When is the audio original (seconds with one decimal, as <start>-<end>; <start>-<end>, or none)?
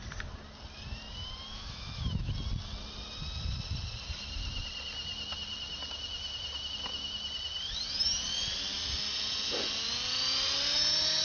0.0-1.5; 2.3-11.2